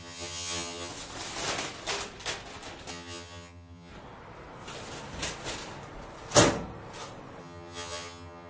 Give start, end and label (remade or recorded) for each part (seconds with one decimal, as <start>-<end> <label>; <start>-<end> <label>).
0.0-0.9 remade; 0.9-2.9 recorded; 2.9-3.9 remade; 3.9-7.4 recorded; 7.4-8.5 remade